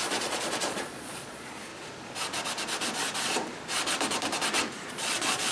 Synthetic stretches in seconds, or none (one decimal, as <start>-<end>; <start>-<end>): 0.0-1.7; 4.9-5.5